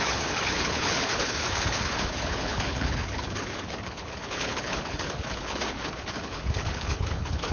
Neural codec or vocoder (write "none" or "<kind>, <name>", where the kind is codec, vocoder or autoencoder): codec, HILCodec